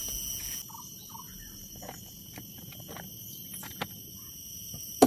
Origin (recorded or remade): recorded